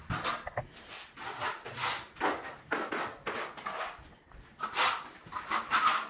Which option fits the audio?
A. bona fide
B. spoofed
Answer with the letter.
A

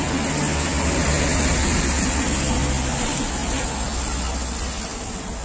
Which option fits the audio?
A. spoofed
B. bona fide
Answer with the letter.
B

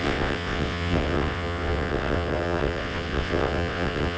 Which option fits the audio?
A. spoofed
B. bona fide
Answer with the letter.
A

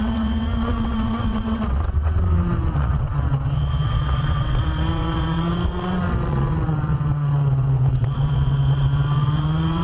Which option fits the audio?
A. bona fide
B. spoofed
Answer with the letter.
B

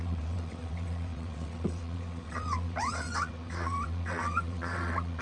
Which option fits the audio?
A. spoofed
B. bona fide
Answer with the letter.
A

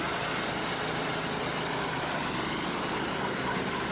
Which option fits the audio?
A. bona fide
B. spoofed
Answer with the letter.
A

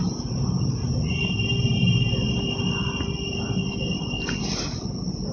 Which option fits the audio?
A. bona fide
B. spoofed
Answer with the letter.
A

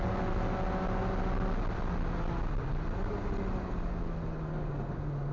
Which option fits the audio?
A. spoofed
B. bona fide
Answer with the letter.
B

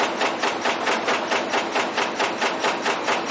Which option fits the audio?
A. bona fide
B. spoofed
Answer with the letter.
A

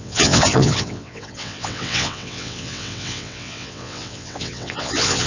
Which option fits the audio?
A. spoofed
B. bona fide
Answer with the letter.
A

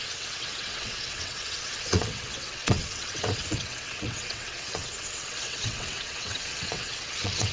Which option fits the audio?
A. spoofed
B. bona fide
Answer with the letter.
A